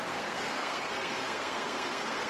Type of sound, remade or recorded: remade